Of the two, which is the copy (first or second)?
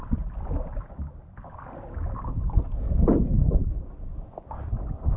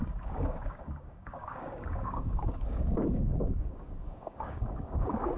second